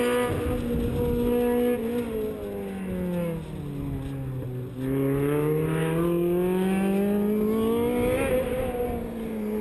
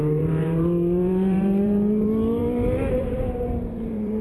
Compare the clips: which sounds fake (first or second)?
second